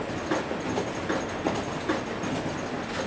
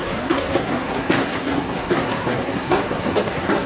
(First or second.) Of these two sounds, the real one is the first